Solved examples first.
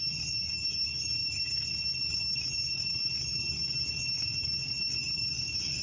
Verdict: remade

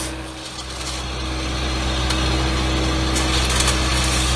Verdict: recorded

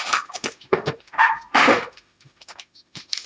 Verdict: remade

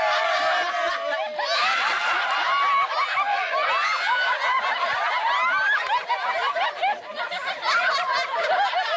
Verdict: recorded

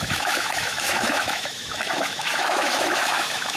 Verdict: remade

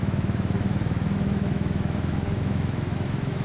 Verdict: remade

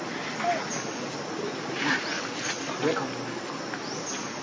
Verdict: recorded